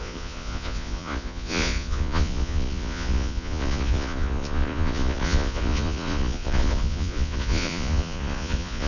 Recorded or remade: remade